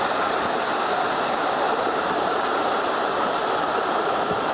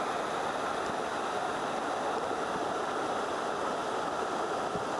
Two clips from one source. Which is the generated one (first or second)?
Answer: first